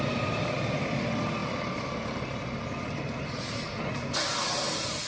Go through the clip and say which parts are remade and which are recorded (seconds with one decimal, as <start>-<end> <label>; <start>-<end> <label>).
0.0-5.1 recorded